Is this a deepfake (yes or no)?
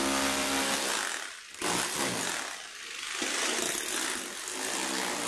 no